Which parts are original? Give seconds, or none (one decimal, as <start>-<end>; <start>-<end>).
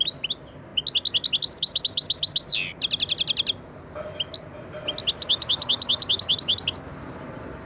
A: 0.0-7.7